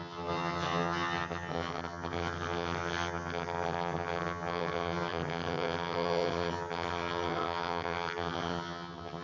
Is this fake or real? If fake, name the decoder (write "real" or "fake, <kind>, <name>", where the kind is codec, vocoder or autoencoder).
fake, vocoder, HiFi-GAN